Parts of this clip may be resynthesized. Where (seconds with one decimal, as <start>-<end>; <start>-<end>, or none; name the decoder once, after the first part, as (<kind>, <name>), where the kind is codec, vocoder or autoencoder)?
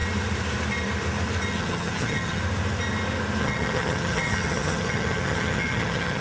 1.5-2.4 (vocoder, HiFi-GAN); 3.4-6.2